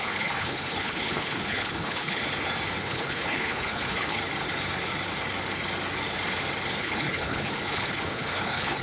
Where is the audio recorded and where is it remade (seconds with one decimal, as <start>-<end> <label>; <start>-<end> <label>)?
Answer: 0.0-2.2 remade; 2.2-2.8 recorded; 2.8-4.2 remade; 4.2-6.8 recorded; 6.8-8.8 remade